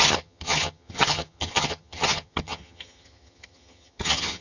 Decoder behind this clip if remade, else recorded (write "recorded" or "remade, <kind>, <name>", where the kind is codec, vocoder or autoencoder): remade, vocoder, HiFi-GAN